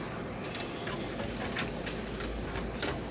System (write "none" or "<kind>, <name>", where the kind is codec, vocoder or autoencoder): none